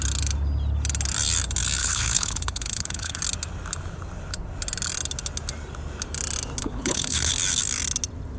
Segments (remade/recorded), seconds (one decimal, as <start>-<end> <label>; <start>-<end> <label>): 0.0-1.8 recorded; 1.8-3.2 remade; 3.2-6.6 recorded; 6.6-7.3 remade; 7.3-8.4 recorded